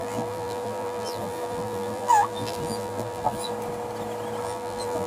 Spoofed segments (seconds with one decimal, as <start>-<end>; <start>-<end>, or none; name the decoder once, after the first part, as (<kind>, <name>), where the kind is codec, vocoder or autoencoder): 0.0-3.5 (vocoder, BigVGAN v2); 4.4-5.1